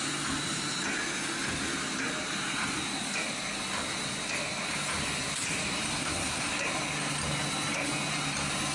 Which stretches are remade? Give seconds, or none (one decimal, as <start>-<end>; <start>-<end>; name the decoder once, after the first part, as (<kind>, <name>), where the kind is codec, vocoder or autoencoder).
5.9-6.5 (codec, SNAC)